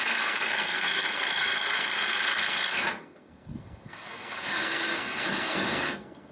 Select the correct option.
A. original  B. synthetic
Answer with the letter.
B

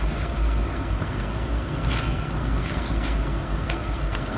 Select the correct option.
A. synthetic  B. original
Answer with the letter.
A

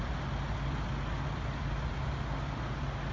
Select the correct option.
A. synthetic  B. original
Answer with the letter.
B